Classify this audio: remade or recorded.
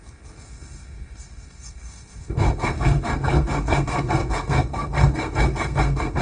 remade